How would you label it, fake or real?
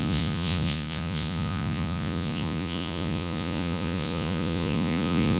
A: fake